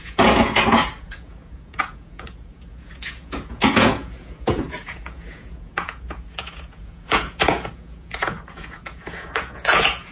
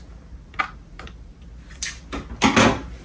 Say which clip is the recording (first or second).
second